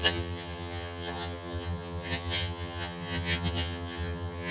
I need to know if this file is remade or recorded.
remade